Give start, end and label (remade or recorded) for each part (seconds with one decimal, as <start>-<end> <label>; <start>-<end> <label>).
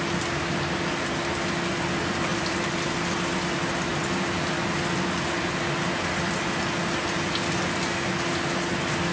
0.0-2.3 recorded; 2.3-2.9 remade; 2.9-3.9 recorded; 3.9-4.5 remade; 4.5-9.1 recorded